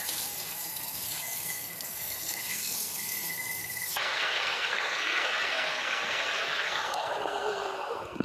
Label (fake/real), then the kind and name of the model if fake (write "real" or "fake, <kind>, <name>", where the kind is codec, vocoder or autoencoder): fake, codec, SNAC